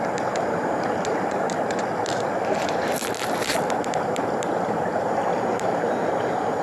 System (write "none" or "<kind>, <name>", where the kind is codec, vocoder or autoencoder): none